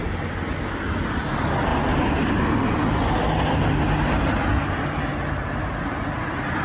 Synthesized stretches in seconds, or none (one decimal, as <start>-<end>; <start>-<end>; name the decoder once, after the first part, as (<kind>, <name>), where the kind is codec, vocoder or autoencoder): none